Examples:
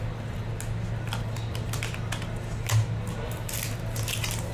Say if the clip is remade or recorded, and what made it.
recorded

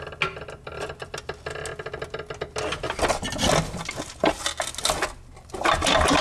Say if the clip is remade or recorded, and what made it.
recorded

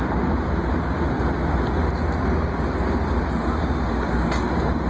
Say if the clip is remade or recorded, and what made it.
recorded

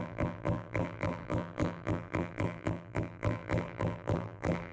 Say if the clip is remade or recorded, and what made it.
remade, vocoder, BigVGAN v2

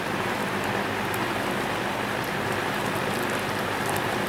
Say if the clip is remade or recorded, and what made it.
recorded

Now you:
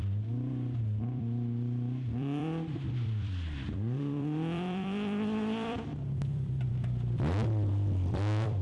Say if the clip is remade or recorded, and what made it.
remade, vocoder, BigVGAN v2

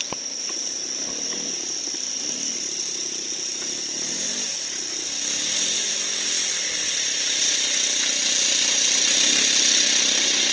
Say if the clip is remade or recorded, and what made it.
remade, vocoder, BigVGAN v2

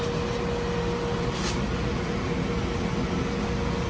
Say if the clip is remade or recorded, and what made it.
recorded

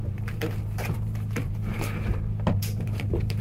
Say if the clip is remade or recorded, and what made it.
remade, vocoder, BigVGAN v2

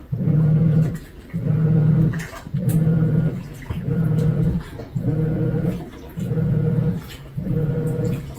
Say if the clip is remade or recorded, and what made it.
remade, vocoder, BigVGAN v2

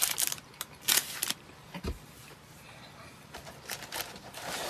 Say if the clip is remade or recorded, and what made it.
remade, vocoder, BigVGAN v2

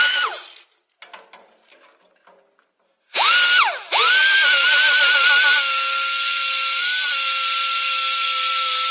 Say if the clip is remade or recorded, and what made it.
recorded